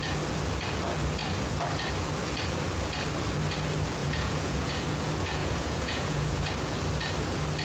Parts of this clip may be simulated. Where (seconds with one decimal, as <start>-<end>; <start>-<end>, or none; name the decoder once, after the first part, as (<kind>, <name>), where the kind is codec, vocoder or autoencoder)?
4.0-4.7 (vocoder, Vocos); 5.4-6.5